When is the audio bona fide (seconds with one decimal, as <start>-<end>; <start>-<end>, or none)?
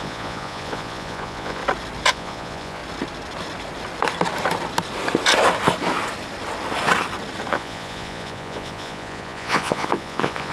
1.6-2.1; 2.8-7.5